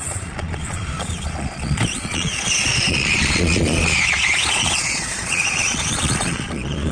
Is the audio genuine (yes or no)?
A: no